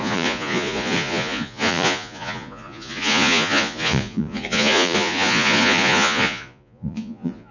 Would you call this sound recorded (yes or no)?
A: no